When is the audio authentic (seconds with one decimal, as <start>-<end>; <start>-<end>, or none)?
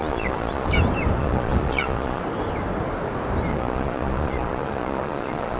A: 0.7-1.2; 2.2-3.5